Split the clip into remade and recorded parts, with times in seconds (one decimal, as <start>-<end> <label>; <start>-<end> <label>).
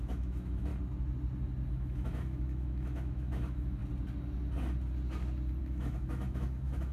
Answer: 0.0-0.7 remade; 0.7-1.7 recorded; 1.7-3.8 remade; 3.8-5.6 recorded; 5.6-6.9 remade